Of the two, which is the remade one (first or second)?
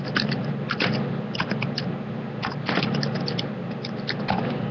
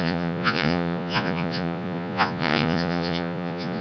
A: second